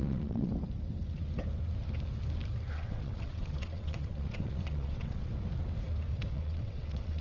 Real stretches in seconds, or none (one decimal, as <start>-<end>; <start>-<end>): 0.5-2.7; 5.3-6.3